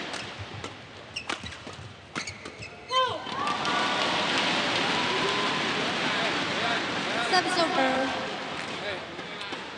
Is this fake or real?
real